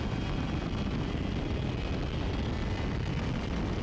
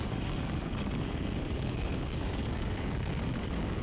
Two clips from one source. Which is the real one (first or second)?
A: first